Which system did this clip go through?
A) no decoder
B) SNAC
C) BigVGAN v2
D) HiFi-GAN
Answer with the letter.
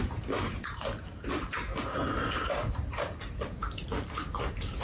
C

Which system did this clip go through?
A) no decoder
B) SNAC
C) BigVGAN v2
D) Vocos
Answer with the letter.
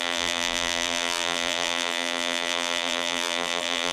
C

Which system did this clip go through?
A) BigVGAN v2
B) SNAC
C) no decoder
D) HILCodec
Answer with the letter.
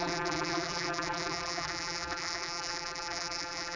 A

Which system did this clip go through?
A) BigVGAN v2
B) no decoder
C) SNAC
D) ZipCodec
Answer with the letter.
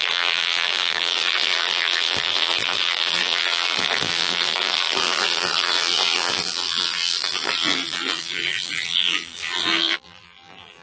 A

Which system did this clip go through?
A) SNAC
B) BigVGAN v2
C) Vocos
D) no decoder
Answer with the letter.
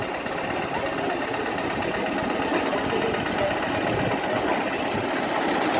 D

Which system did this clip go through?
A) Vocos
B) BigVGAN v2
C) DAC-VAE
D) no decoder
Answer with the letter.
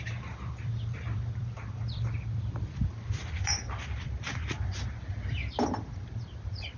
B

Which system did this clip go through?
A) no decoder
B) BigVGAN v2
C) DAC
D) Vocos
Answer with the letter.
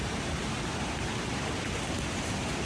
B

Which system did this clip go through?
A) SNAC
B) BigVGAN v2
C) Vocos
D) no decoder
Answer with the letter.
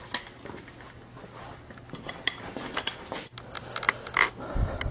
D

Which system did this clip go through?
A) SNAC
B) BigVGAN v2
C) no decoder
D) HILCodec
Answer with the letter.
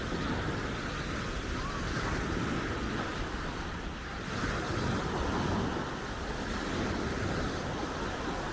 C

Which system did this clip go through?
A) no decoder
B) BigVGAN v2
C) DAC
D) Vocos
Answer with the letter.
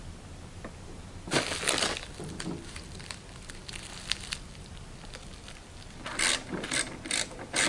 B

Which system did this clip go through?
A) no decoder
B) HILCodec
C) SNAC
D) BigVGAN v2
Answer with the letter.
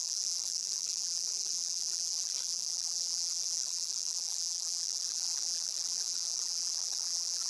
D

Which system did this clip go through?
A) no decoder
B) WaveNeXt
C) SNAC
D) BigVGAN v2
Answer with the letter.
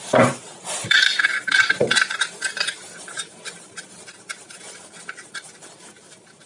D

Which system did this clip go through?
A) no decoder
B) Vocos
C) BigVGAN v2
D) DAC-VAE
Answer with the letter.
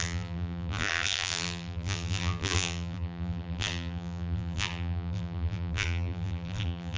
C